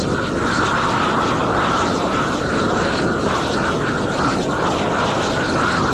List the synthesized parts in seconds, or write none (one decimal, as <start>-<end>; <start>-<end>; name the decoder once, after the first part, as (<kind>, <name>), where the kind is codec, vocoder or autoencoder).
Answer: 1.4-3.4 (vocoder, BigVGAN v2)